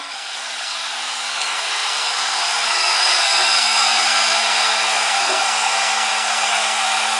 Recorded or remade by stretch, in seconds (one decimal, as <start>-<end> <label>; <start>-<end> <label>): 0.0-7.2 remade